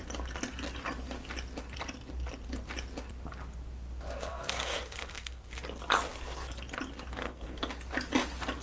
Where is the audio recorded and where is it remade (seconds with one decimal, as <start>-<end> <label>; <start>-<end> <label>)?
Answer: 0.0-4.3 recorded; 4.3-5.5 remade; 5.5-7.1 recorded; 7.1-7.7 remade; 7.7-8.6 recorded